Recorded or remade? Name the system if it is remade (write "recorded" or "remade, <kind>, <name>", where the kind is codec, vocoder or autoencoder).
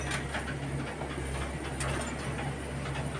recorded